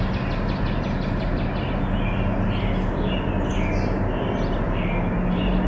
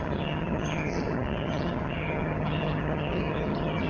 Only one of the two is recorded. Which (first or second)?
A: first